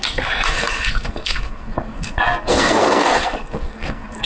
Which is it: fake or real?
fake